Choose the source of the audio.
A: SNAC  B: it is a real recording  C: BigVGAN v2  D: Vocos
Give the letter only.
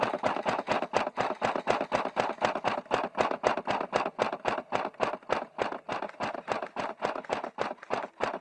B